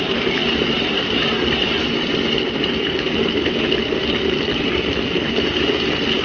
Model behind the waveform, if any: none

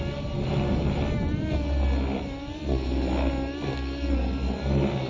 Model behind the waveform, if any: none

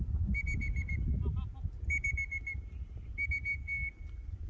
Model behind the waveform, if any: none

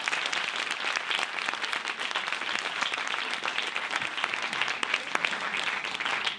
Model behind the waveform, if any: none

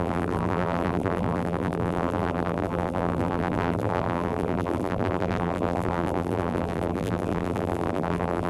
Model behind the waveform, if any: vocoder, BigVGAN v2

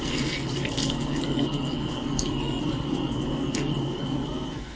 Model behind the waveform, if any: codec, SNAC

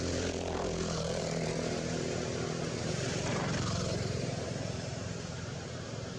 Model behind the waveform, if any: vocoder, BigVGAN v2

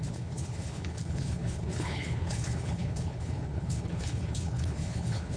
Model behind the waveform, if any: codec, HILCodec